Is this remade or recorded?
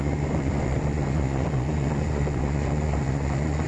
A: remade